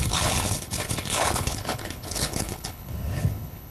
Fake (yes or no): yes